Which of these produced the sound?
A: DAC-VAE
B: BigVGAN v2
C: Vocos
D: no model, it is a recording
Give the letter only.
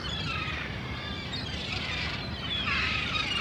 B